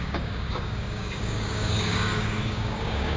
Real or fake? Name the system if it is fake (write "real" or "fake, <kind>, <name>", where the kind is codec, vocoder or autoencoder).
fake, codec, DAC